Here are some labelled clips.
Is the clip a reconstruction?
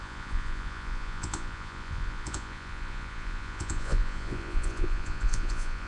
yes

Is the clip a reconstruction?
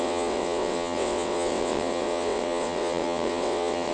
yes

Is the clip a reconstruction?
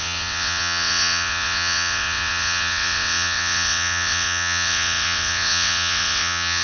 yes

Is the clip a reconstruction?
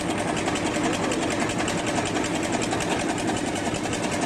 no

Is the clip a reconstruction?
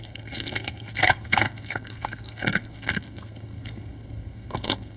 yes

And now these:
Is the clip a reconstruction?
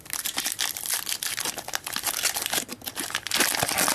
no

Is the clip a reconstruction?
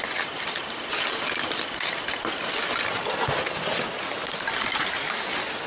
no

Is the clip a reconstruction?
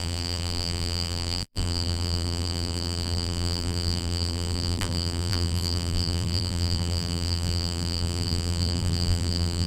yes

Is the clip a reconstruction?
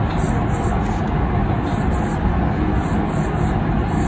no